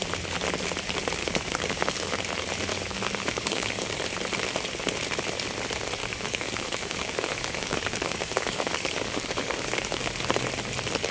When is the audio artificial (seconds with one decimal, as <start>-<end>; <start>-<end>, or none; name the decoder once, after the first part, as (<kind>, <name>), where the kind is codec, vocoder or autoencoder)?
1.2-2.2 (codec, DAC); 2.7-4.0; 6.0-10.1